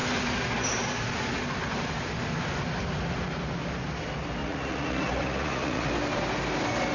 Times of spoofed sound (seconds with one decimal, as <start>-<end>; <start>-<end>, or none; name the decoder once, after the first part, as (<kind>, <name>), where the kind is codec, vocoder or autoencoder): 4.4-5.9 (vocoder, Vocos)